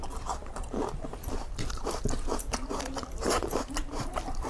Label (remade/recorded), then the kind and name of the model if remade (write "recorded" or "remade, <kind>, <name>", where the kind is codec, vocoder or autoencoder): remade, vocoder, BigVGAN v2